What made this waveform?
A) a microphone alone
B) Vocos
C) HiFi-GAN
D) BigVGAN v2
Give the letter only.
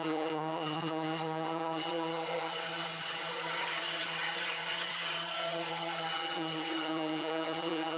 C